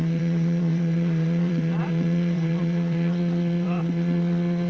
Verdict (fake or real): fake